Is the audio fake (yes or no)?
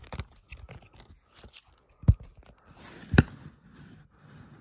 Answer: no